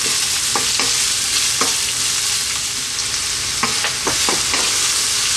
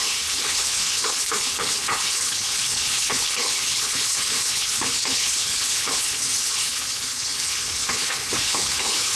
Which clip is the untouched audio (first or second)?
first